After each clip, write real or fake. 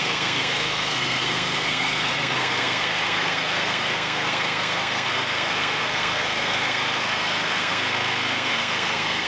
fake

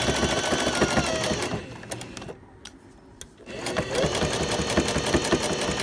real